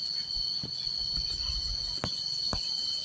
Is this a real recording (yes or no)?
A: yes